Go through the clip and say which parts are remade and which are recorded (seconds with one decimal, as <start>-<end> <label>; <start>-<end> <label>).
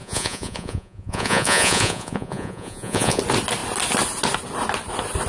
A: 0.0-3.2 remade; 3.2-5.3 recorded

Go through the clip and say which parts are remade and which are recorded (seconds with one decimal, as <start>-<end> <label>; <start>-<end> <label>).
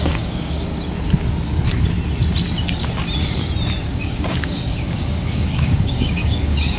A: 0.0-0.7 remade; 0.7-4.0 recorded; 4.0-6.8 remade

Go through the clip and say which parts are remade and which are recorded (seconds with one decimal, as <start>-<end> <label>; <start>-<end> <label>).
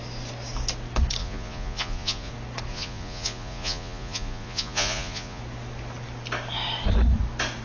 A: 0.0-1.2 recorded; 1.2-2.3 remade; 2.3-2.7 recorded; 2.7-5.4 remade; 5.4-7.6 recorded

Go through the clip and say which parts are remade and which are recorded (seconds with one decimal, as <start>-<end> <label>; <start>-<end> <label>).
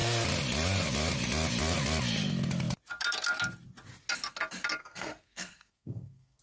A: 0.0-4.8 recorded; 4.8-6.4 remade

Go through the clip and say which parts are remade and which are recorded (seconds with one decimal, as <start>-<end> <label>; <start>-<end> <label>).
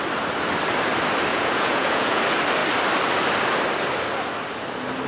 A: 0.0-1.3 recorded; 1.3-2.2 remade; 2.2-5.1 recorded